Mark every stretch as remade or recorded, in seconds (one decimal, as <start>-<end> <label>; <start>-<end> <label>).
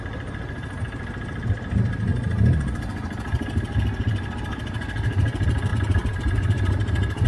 0.0-5.7 recorded; 5.7-7.3 remade